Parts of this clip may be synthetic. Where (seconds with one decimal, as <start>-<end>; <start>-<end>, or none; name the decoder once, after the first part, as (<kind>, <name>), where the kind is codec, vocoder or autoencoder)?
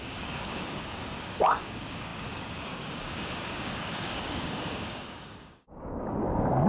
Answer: 0.0-6.7 (codec, DAC)